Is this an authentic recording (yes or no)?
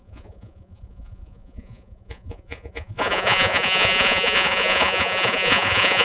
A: no